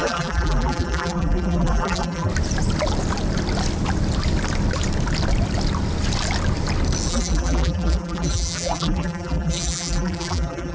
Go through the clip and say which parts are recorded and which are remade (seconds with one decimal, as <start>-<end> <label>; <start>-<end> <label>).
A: 0.0-2.3 remade; 2.3-7.1 recorded; 7.1-10.7 remade